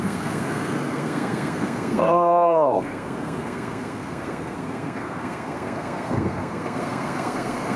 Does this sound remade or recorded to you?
remade